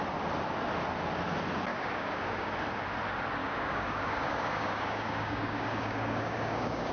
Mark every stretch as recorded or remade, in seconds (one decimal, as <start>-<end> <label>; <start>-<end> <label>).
0.0-1.7 recorded; 1.7-2.5 remade; 2.5-3.4 recorded; 3.4-6.9 remade